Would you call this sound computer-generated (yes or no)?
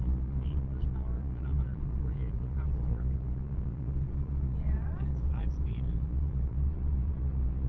yes